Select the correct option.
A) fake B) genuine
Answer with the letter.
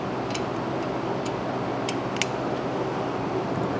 B